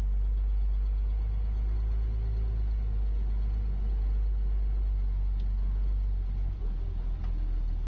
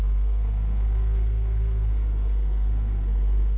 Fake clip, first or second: second